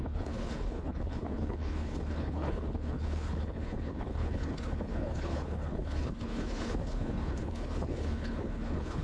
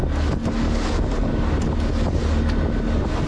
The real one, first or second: second